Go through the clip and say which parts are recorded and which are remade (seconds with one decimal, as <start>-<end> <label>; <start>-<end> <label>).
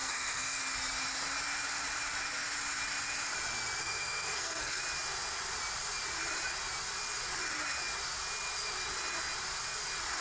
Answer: 0.0-0.6 remade; 0.6-3.8 recorded; 3.8-4.8 remade; 4.8-10.2 recorded